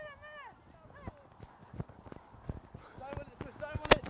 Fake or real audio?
real